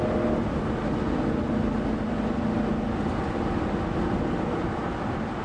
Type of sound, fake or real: real